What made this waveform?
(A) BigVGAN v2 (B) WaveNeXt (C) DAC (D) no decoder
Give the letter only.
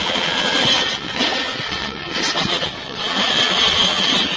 B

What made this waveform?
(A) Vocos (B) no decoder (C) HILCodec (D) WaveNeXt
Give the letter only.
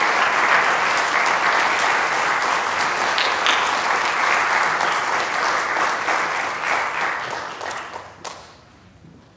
B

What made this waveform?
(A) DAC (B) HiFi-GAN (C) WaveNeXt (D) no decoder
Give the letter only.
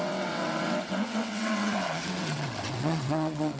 C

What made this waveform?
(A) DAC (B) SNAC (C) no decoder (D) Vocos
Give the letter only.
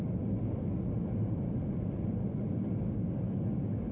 C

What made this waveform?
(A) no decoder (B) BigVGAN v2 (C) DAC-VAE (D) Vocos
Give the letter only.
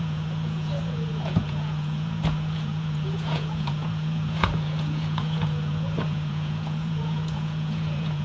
D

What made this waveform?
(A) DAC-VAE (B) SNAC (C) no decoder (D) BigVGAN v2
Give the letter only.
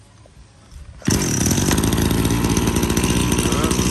C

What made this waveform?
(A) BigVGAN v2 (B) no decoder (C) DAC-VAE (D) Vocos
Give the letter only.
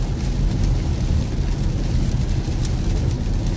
B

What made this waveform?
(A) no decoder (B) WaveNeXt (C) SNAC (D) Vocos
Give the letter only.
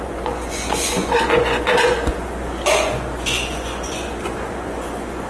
D